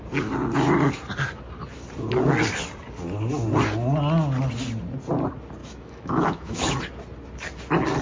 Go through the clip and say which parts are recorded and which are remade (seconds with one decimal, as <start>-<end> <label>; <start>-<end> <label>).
0.0-5.6 recorded; 5.6-6.8 remade; 6.8-8.0 recorded